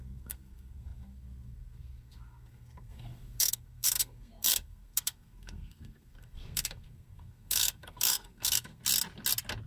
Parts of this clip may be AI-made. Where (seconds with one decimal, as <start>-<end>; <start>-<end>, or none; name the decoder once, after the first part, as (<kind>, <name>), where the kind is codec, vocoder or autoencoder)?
0.0-8.8 (codec, SNAC)